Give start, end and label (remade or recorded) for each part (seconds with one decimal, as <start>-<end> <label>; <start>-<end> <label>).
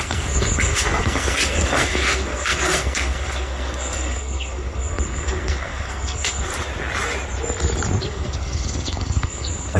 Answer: 0.0-6.5 remade; 6.5-8.0 recorded; 8.0-9.8 remade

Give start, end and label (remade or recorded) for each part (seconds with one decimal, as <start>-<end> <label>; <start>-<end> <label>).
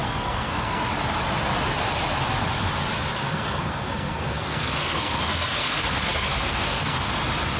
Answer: 0.0-0.9 remade; 0.9-3.2 recorded; 3.2-7.1 remade; 7.1-7.6 recorded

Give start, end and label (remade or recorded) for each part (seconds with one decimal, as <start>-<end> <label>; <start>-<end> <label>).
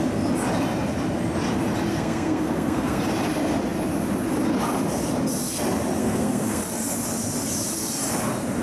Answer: 0.0-1.9 recorded; 1.9-3.0 remade; 3.0-6.0 recorded; 6.0-6.6 remade; 6.6-8.6 recorded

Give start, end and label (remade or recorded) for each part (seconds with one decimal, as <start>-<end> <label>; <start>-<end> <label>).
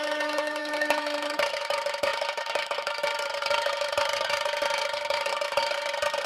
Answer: 0.0-6.3 remade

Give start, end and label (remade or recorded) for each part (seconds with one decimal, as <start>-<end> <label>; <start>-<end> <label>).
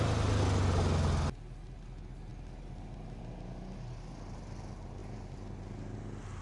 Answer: 0.0-6.4 recorded